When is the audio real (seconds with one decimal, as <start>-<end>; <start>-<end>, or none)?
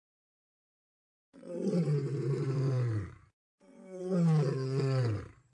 0.0-0.7; 4.0-5.5